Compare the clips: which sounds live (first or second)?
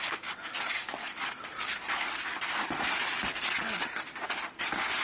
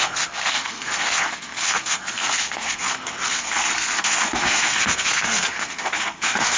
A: first